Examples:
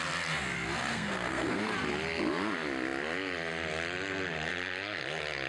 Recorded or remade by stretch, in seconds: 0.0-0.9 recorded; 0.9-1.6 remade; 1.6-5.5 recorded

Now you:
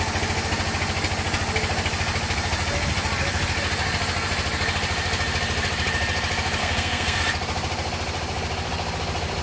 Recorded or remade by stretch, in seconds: 0.0-6.6 recorded; 6.6-7.2 remade; 7.2-9.4 recorded